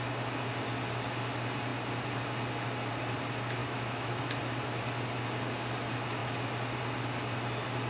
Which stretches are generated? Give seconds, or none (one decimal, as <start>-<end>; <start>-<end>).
3.6-4.2